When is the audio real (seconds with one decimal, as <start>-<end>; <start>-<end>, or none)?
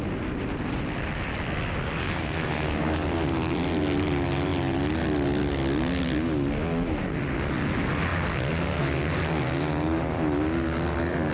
0.0-2.0; 2.9-11.3